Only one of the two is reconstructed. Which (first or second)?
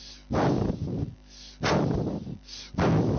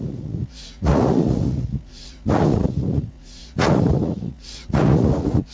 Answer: second